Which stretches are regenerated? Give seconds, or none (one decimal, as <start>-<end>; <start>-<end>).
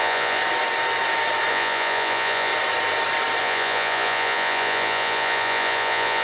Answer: 0.0-0.4; 1.5-2.5; 3.4-6.2